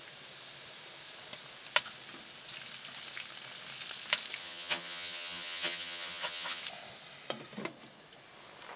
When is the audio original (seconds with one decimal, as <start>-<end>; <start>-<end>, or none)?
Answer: 0.0-4.4; 6.6-8.8